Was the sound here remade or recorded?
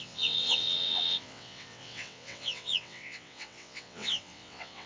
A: remade